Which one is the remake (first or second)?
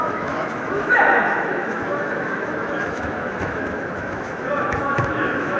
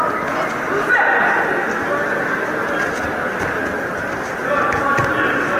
first